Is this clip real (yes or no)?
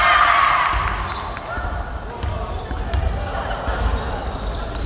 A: yes